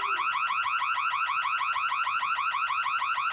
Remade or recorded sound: recorded